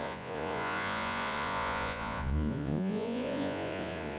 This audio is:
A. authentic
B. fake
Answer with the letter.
B